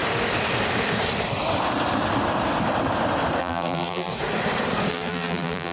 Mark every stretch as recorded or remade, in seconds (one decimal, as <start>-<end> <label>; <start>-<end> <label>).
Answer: 0.0-3.4 recorded; 3.4-4.1 remade; 4.1-4.9 recorded; 4.9-5.7 remade